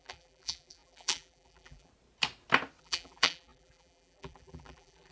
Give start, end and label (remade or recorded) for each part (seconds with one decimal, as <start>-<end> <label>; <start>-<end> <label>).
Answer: 0.0-1.9 remade; 1.9-2.8 recorded; 2.8-5.1 remade